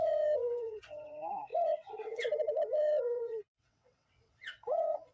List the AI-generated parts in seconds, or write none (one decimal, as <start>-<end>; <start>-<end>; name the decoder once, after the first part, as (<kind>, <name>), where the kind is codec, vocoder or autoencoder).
0.0-5.1 (vocoder, WaveNeXt)